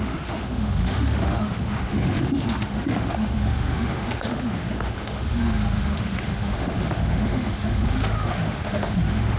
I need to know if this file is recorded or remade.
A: remade